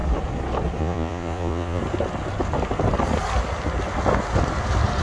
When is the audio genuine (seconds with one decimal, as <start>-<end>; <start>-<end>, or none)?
0.0-0.8; 1.8-5.0

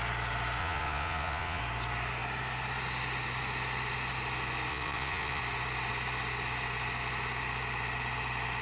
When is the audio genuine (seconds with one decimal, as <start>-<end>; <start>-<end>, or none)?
0.0-0.6; 1.6-4.7; 5.4-8.6